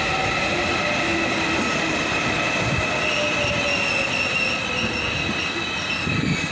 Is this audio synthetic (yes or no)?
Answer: no